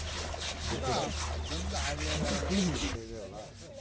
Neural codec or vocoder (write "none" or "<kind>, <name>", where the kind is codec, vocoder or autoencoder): none